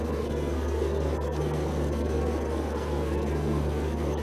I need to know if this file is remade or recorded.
remade